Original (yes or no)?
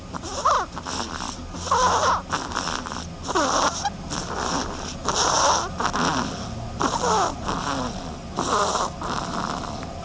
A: yes